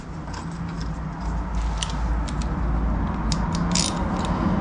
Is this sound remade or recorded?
recorded